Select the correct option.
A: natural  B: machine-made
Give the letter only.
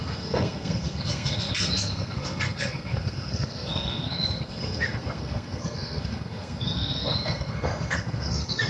B